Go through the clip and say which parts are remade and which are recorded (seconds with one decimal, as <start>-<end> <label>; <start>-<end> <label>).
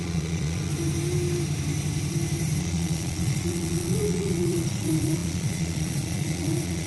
0.0-0.7 remade; 0.7-2.6 recorded; 2.6-6.9 remade